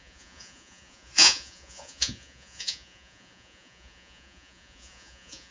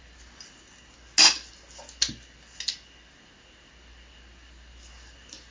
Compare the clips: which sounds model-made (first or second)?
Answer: first